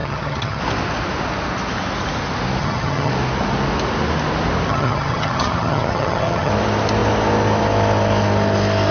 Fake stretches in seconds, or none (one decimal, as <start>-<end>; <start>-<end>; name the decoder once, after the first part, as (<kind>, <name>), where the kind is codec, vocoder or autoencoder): 0.0-0.6 (vocoder, HiFi-GAN); 2.6-3.1; 4.7-6.5